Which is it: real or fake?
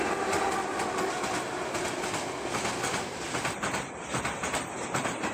real